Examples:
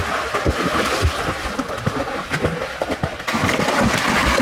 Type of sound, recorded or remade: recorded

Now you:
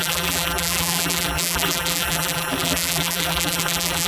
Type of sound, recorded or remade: remade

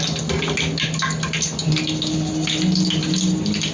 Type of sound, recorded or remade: recorded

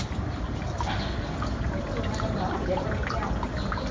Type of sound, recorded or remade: recorded